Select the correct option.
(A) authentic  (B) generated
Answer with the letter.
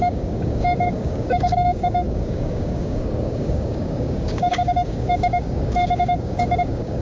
B